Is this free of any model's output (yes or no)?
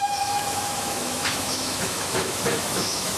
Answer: no